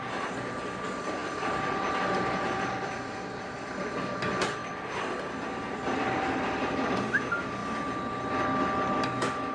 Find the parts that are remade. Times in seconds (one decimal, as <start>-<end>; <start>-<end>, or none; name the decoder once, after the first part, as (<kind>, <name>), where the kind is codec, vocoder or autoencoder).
none